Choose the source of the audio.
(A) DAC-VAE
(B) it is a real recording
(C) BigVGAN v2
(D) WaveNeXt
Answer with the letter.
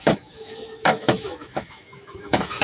A